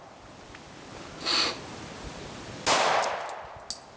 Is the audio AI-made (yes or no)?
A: no